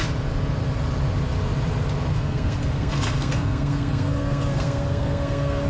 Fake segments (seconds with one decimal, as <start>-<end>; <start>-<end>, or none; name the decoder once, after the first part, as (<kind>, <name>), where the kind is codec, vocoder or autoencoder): 2.1-5.7 (codec, SNAC)